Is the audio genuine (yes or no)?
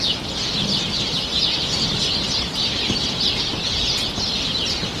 yes